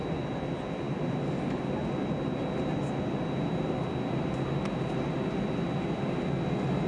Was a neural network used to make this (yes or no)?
no